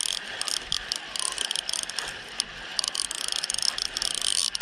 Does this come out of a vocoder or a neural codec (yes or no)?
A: no